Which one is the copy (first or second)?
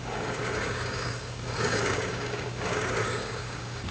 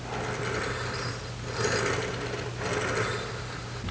first